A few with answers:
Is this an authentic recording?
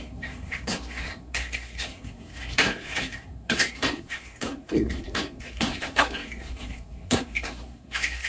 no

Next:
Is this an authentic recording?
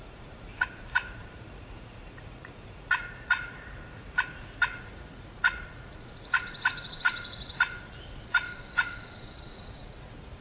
no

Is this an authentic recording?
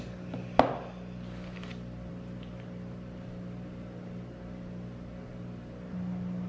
yes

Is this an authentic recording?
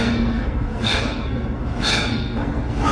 no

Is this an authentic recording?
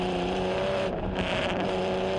no